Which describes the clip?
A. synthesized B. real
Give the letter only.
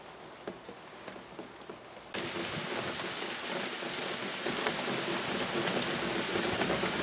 B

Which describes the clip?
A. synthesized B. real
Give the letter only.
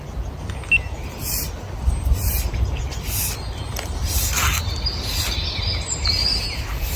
B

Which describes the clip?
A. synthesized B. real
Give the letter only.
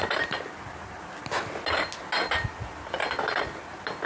B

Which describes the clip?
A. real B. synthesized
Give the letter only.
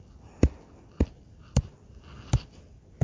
A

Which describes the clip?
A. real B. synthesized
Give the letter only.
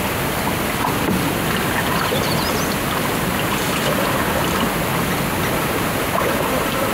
A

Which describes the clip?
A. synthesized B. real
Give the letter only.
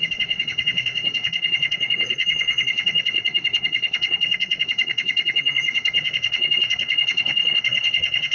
A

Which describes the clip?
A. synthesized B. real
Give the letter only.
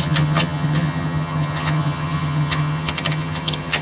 A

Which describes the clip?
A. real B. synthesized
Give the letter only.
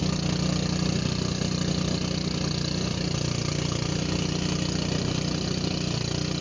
A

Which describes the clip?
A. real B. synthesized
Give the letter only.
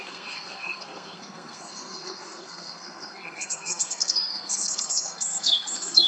B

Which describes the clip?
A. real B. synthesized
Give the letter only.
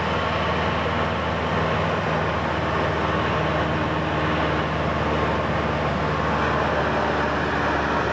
A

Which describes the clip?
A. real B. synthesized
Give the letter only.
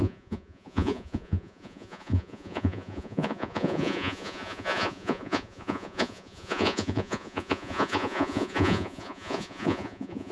B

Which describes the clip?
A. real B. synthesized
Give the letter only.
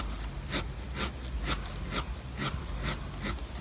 A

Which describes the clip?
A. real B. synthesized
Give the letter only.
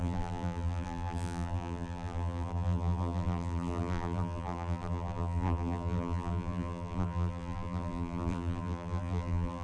B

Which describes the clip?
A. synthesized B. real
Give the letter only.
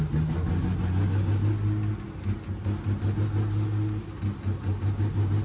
B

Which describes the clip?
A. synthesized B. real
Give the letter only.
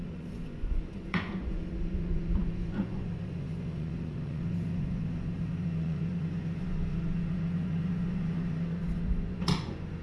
A